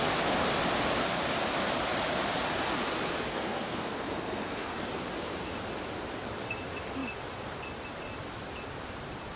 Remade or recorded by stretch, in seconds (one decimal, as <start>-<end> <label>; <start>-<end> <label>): 0.0-3.3 recorded; 3.3-4.9 remade; 4.9-9.4 recorded